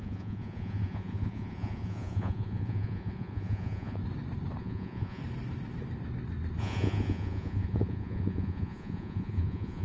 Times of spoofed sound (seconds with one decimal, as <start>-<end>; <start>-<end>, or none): 0.0-4.0; 4.6-5.2; 6.6-9.8